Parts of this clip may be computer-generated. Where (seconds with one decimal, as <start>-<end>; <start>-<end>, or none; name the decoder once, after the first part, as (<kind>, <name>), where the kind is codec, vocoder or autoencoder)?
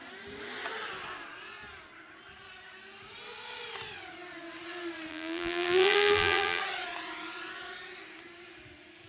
5.1-6.6 (vocoder, BigVGAN v2)